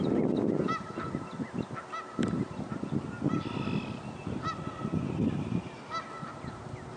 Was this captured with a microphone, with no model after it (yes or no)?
yes